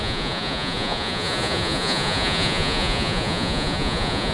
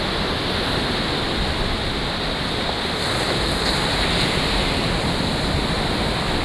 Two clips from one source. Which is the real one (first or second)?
second